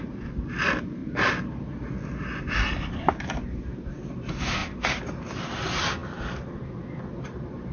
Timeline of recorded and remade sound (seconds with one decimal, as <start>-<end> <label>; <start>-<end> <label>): 0.0-7.7 recorded